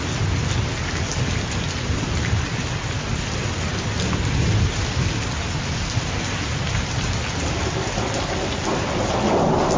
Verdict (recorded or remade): recorded